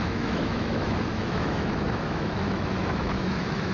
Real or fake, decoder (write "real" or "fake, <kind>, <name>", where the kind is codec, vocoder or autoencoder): fake, autoencoder, DAC-VAE